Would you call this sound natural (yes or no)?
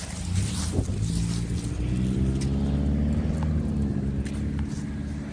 yes